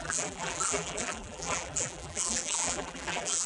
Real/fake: fake